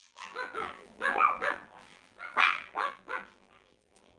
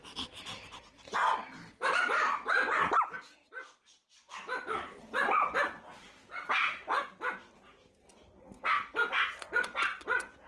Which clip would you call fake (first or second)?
first